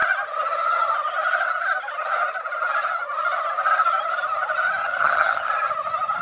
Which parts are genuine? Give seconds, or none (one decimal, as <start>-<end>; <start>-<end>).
0.0-4.8; 5.5-6.2